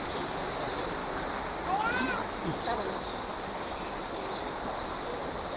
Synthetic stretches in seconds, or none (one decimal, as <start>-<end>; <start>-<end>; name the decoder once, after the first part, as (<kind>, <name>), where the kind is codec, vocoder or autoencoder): none